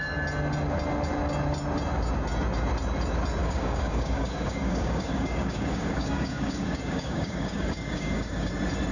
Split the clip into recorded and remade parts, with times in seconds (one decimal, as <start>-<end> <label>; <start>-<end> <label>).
0.0-3.4 recorded; 3.4-8.5 remade; 8.5-8.9 recorded